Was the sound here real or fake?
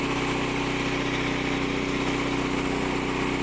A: real